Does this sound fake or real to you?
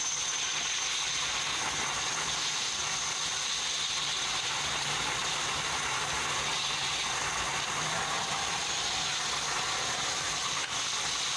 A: real